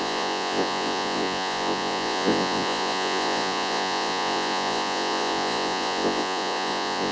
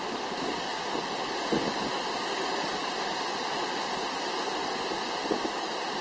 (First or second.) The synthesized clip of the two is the first